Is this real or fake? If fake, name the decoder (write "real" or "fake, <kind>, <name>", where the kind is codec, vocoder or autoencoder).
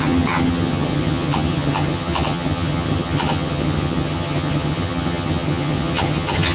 fake, vocoder, HiFi-GAN